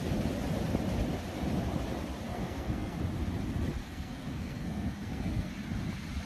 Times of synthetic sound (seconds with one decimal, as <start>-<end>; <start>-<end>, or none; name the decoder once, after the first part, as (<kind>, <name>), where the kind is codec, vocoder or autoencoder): 2.3-3.0 (codec, SNAC); 3.8-5.5